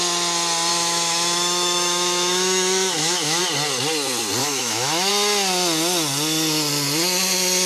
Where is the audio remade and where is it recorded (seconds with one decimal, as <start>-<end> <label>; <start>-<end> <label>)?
0.0-0.7 recorded; 0.7-3.4 remade; 3.4-4.4 recorded; 4.4-5.1 remade; 5.1-7.7 recorded